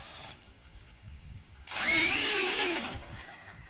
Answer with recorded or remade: remade